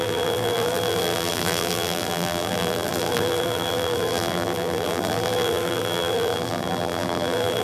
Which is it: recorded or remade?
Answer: remade